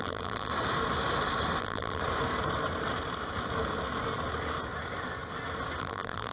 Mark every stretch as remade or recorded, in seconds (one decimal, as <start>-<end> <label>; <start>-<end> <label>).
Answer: 0.0-0.5 remade; 0.5-1.6 recorded; 1.6-2.0 remade; 2.0-5.8 recorded; 5.8-6.3 remade